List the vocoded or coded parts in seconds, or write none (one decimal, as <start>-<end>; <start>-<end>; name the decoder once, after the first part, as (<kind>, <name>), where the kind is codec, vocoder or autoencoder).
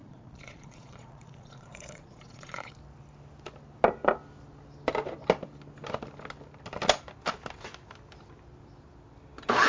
0.0-2.7 (vocoder, Vocos)